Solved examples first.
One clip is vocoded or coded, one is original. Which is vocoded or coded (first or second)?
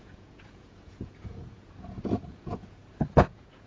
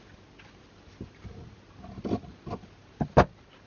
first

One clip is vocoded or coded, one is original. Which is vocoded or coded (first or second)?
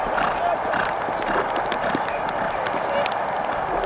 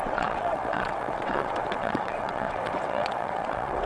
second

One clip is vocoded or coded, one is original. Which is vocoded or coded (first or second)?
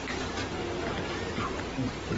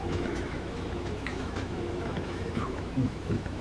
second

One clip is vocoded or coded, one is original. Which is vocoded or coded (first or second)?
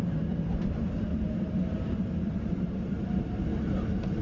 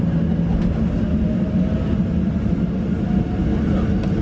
first